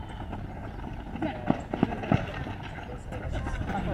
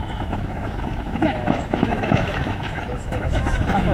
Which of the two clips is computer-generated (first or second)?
second